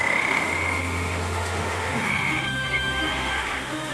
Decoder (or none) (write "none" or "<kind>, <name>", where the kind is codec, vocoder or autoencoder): autoencoder, DAC-VAE